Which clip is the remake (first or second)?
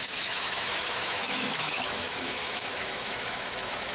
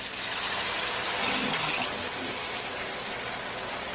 first